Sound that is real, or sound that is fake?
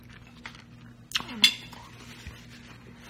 real